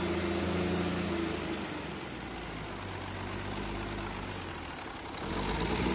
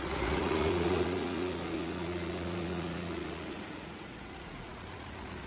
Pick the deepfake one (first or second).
second